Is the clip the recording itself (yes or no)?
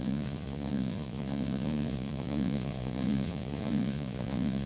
no